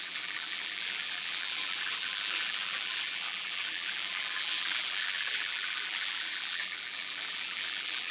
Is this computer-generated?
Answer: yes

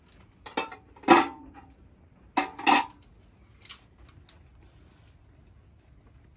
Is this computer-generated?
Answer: no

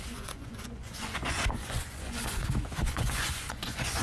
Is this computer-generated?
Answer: yes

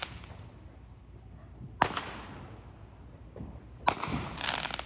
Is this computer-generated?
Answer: no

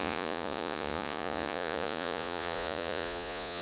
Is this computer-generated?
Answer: yes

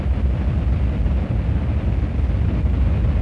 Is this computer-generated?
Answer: no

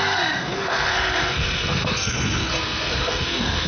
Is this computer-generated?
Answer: yes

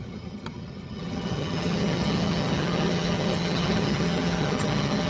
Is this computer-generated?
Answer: yes